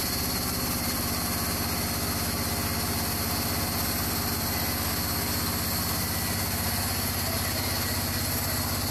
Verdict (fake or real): real